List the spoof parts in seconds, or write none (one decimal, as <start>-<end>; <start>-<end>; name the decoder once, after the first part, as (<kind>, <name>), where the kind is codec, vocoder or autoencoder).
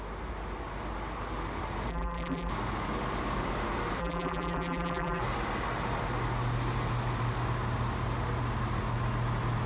1.9-2.5 (vocoder, BigVGAN v2); 4.0-5.2